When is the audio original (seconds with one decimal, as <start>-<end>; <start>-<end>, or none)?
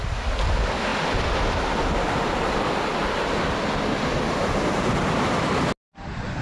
0.0-6.4